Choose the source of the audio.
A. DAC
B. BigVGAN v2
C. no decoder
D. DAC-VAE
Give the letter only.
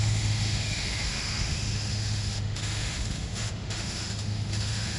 D